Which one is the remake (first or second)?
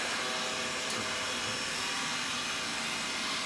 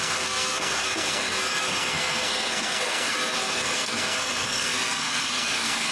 second